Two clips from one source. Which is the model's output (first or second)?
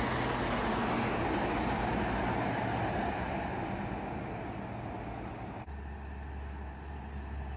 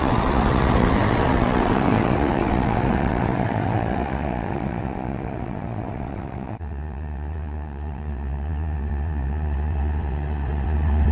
second